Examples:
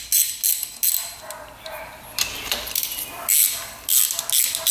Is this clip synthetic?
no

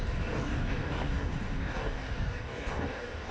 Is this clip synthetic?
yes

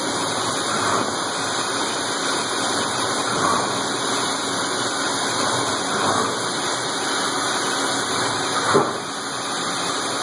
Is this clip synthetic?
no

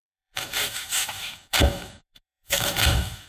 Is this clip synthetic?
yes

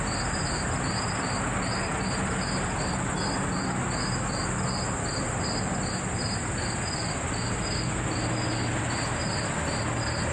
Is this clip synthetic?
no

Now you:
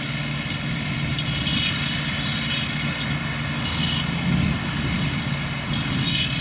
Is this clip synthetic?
no